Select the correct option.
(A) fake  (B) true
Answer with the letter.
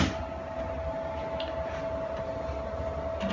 B